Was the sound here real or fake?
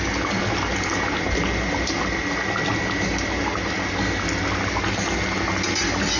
real